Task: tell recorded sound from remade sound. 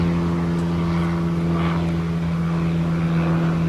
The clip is recorded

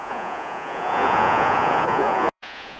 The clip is remade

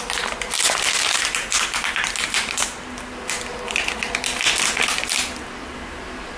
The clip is recorded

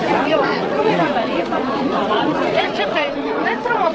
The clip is remade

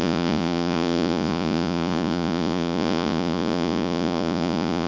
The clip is remade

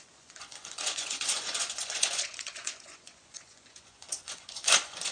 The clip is remade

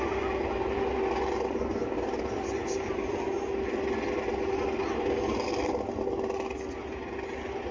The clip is recorded